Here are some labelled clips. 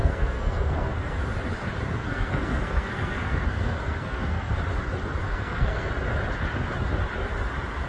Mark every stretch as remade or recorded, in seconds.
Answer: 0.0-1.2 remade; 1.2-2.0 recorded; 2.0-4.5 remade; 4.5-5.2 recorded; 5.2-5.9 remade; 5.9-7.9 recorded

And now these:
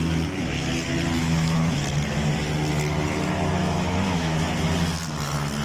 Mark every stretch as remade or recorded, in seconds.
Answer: 0.0-1.2 recorded; 1.2-1.8 remade; 1.8-3.6 recorded; 3.6-4.5 remade; 4.5-5.6 recorded